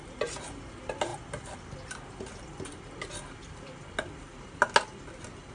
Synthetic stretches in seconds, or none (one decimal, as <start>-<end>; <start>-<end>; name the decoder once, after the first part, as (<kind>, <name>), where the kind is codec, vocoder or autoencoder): none